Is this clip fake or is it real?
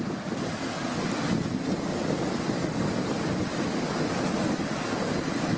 real